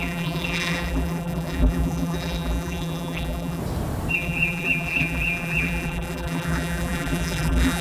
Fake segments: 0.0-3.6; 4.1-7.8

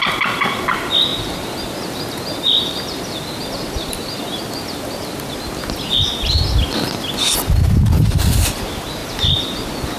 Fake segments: 1.1-6.3; 9.0-10.0

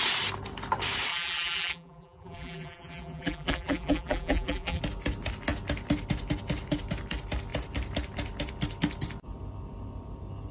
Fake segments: 1.1-4.8

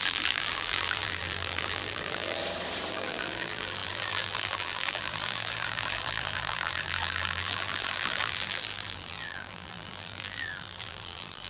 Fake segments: 0.0-2.4; 2.9-11.5